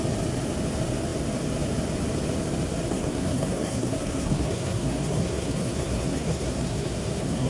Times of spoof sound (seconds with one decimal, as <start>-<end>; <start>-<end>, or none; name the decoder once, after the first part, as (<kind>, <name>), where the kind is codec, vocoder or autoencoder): 2.9-7.5 (codec, SNAC)

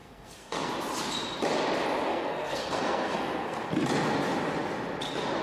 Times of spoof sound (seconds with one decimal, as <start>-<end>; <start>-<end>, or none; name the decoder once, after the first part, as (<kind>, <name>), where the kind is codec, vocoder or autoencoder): 0.0-0.7 (codec, SNAC); 2.1-3.7

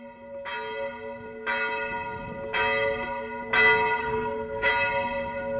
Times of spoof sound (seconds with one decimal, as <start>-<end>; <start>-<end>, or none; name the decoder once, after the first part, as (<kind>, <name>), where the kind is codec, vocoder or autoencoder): 4.0-4.7 (codec, SNAC)

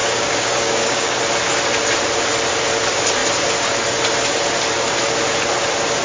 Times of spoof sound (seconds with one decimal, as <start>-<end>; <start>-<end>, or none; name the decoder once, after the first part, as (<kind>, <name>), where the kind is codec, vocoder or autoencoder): 0.0-1.2 (codec, DAC)

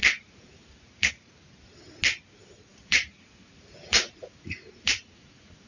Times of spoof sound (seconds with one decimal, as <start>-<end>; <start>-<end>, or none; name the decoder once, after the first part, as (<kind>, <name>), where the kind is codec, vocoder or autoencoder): 0.0-1.3 (vocoder, Vocos); 2.7-5.7

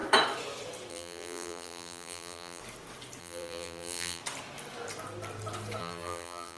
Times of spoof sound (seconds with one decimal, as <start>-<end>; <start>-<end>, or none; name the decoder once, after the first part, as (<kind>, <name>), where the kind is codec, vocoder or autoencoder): 0.9-2.6 (vocoder, BigVGAN v2); 3.2-4.2; 5.8-6.6

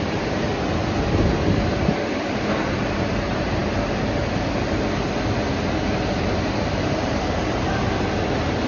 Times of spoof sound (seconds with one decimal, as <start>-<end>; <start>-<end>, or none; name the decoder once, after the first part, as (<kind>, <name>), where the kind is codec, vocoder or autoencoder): 0.0-0.5 (vocoder, BigVGAN v2); 1.5-3.6; 6.2-8.7

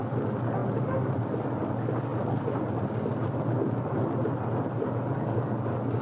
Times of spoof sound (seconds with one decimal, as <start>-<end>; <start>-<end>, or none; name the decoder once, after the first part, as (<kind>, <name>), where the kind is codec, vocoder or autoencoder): none